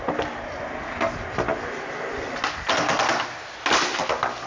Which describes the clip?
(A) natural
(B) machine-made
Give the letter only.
A